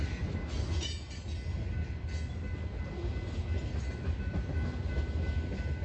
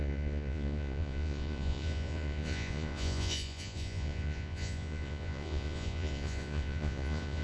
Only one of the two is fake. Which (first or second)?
second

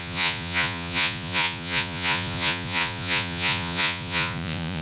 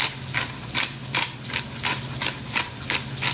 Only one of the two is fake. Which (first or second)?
first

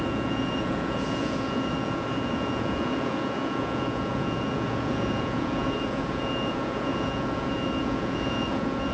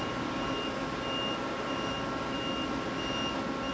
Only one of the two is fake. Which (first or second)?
first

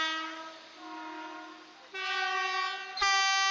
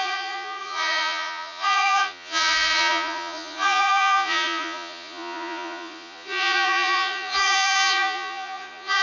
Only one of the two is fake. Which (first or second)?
second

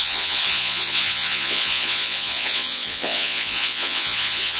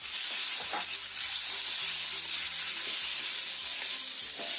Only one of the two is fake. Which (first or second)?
first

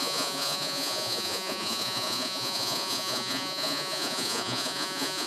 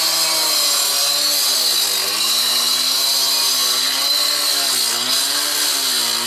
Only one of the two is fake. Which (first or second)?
first